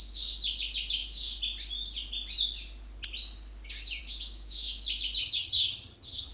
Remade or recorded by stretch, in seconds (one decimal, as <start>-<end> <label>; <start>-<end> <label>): 0.0-5.2 recorded; 5.2-6.3 remade